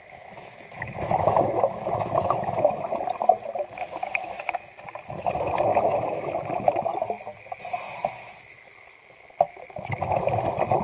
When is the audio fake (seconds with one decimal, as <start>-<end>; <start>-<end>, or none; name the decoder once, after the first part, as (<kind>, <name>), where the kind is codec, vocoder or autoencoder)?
0.0-2.9 (autoencoder, DAC-VAE); 4.0-4.5; 5.7-6.3